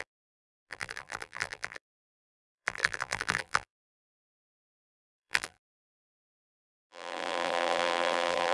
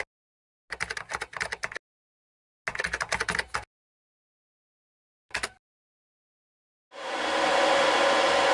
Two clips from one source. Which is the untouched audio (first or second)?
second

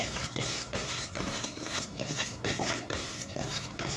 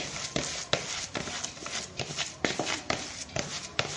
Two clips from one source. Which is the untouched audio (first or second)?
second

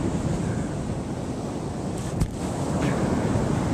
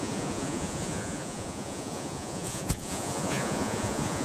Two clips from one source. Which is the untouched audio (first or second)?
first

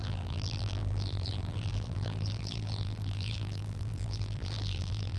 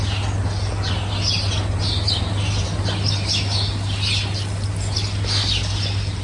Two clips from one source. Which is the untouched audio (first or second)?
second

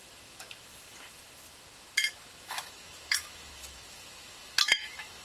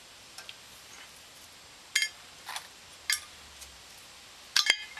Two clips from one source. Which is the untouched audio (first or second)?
second